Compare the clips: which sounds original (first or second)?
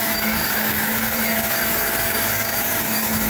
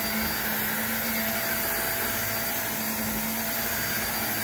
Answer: second